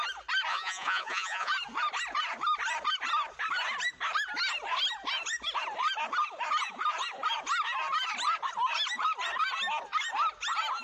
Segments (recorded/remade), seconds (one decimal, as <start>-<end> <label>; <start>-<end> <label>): 0.0-0.5 recorded; 0.5-1.5 remade; 1.5-10.8 recorded